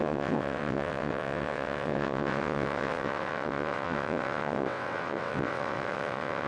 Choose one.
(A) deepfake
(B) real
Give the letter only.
A